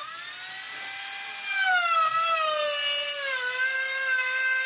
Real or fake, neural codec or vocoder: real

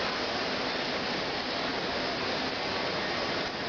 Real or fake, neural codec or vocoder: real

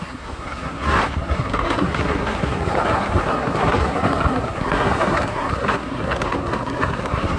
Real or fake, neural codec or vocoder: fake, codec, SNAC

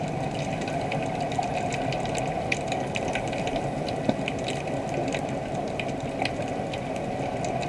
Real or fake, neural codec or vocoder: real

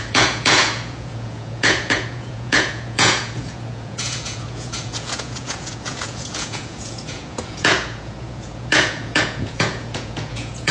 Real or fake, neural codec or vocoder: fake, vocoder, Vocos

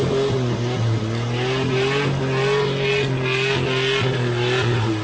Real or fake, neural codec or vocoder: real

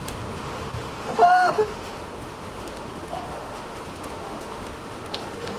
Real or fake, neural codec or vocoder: fake, autoencoder, DAC-VAE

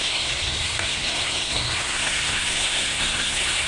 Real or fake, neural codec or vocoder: fake, codec, SNAC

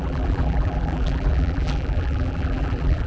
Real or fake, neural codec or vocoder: fake, vocoder, BigVGAN v2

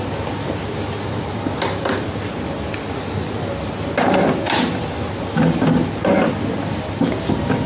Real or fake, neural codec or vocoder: real